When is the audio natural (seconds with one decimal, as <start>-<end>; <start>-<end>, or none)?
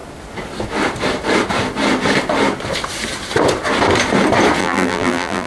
0.0-4.6